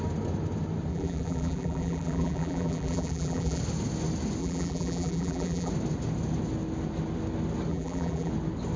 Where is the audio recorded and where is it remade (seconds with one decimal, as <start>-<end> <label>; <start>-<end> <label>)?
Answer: 0.0-0.9 recorded; 0.9-3.6 remade; 3.6-4.4 recorded; 4.4-5.7 remade; 5.7-7.7 recorded; 7.7-8.3 remade; 8.3-8.8 recorded